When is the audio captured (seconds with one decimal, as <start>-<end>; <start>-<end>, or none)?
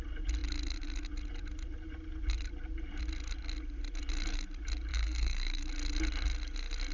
0.0-4.9; 5.6-6.9